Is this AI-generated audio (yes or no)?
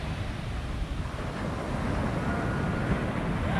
no